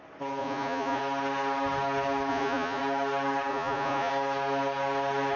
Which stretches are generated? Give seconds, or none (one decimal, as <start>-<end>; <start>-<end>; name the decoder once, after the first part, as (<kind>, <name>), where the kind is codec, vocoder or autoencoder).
0.4-1.0 (vocoder, Vocos); 2.3-2.8; 3.5-4.1